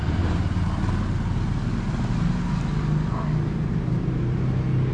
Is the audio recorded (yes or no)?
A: yes